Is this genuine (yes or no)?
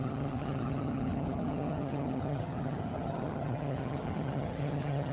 no